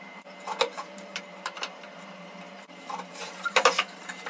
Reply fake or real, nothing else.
fake